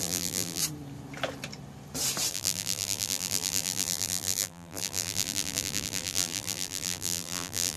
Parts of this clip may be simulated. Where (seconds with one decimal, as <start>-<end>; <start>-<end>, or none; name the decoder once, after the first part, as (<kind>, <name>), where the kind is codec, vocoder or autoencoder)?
0.0-0.6 (vocoder, BigVGAN v2); 2.3-7.8